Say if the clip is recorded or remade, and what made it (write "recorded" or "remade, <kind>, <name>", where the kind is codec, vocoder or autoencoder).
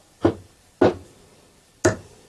recorded